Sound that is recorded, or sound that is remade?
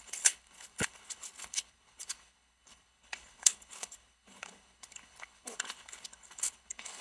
remade